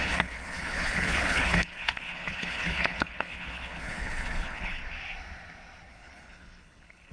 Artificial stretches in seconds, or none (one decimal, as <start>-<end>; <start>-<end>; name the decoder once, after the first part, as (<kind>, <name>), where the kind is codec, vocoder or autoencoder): 0.0-4.8 (codec, HILCodec); 5.9-7.1